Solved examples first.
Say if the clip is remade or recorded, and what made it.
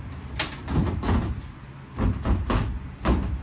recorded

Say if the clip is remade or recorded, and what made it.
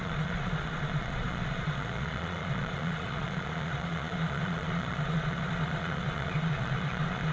remade, vocoder, Vocos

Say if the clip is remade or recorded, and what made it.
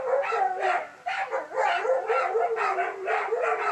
recorded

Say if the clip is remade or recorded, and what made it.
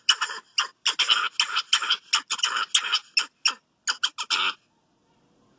recorded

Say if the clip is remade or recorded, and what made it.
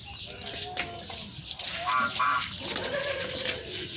recorded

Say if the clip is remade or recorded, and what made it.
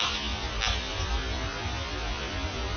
recorded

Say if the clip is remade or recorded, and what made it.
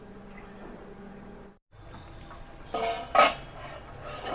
recorded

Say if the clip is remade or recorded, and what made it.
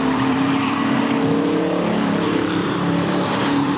remade, vocoder, BigVGAN v2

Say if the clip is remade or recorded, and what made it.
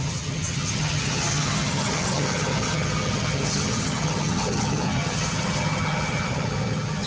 remade, vocoder, HiFi-GAN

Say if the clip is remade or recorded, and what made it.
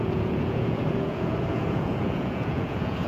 remade, vocoder, Vocos